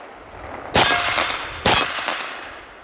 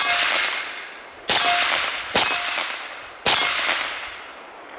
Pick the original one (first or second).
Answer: second